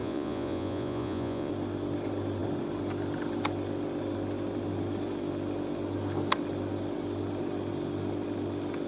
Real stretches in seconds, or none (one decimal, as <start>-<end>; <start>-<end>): 1.5-8.9